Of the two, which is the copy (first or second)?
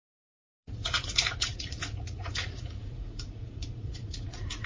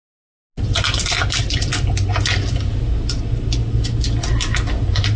first